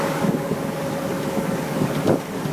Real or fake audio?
fake